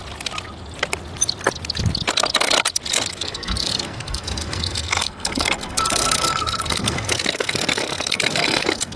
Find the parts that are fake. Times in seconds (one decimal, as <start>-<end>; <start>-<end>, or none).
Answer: 3.1-9.0

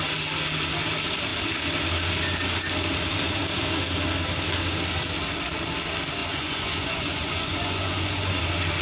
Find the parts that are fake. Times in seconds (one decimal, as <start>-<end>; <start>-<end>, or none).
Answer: 6.2-8.4

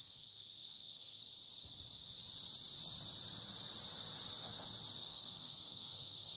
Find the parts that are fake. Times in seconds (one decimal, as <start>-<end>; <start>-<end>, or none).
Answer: 0.0-1.2; 5.0-6.4

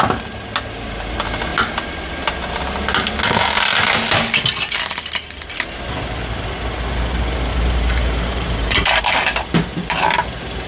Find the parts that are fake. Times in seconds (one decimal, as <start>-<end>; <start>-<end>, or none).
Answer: 7.5-9.0; 9.8-10.7

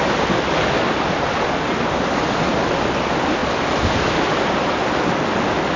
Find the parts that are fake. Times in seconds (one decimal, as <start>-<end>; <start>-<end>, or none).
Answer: none